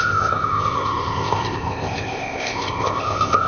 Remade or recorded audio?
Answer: remade